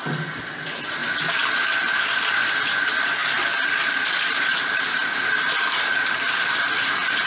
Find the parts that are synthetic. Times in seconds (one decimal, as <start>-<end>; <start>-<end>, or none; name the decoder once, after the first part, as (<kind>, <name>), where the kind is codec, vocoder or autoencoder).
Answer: 1.0-2.5 (vocoder, BigVGAN v2); 3.2-7.3